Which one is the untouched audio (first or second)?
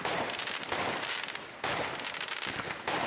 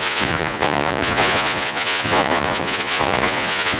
first